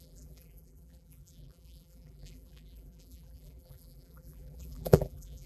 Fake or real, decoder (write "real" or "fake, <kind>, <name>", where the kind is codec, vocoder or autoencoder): fake, vocoder, BigVGAN v2